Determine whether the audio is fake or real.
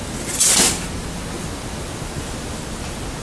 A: real